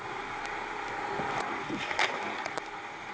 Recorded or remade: recorded